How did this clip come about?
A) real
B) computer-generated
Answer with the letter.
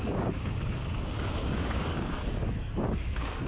B